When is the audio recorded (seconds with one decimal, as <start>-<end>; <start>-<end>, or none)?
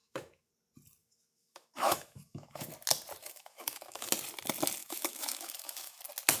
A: 0.5-1.0; 2.7-3.2; 4.1-4.8; 6.0-6.4